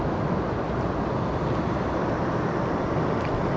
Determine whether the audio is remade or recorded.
recorded